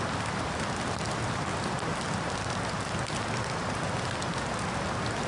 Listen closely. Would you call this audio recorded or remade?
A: recorded